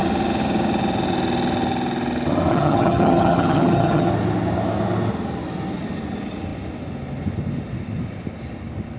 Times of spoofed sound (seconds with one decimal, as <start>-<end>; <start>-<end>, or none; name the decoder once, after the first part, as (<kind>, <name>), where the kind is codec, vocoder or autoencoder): 2.5-4.1 (vocoder, HiFi-GAN)